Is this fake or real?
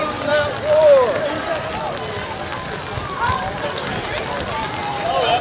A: real